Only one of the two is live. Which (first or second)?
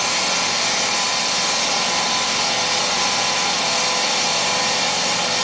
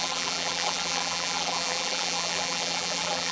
first